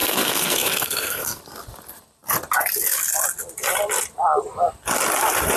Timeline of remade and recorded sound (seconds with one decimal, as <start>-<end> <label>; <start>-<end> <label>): 0.0-1.4 remade; 1.4-5.6 recorded